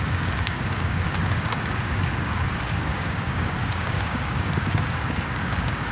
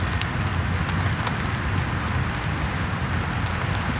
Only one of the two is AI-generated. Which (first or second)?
first